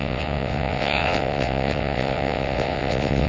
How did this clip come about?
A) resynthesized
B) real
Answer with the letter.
A